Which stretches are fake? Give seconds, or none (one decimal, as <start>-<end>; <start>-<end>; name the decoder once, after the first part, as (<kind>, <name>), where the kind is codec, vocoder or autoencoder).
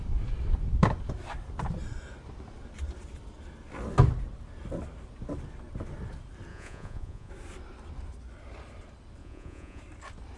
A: 6.5-7.3 (vocoder, Vocos); 9.2-9.8